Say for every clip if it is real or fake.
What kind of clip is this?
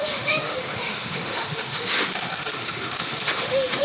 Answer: fake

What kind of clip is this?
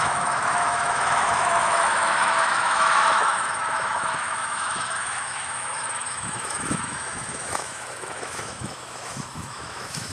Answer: fake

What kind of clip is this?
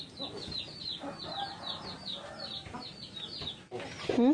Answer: real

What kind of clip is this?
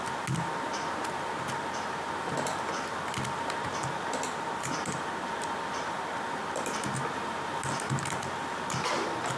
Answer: real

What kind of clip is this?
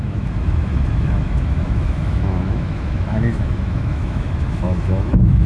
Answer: fake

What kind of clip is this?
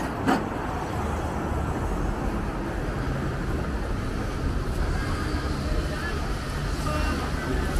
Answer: real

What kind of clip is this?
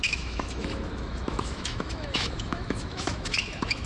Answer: fake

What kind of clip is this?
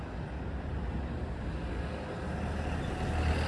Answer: real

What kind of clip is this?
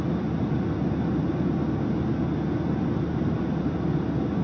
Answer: real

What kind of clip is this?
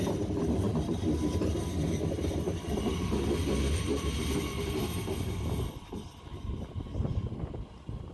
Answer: real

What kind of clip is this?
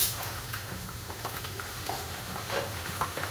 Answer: fake